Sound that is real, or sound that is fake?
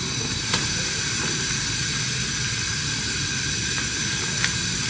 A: real